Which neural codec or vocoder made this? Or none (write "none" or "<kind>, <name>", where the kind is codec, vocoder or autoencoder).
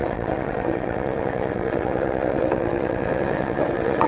vocoder, WaveNeXt